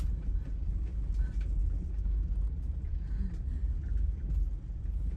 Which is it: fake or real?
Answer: real